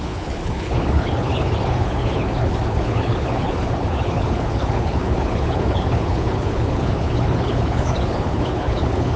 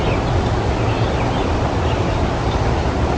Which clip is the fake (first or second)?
first